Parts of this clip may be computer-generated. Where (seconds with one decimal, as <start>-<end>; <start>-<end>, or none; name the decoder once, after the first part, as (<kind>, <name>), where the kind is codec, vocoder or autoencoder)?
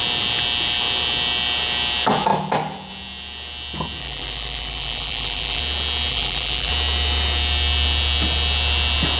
4.0-5.6 (vocoder, BigVGAN v2); 6.1-6.7